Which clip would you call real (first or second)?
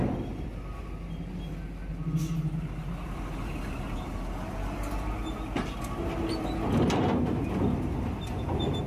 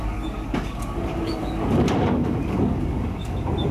first